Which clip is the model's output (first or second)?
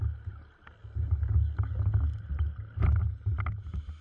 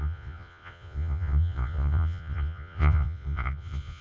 second